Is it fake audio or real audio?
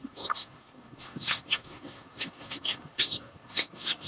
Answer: fake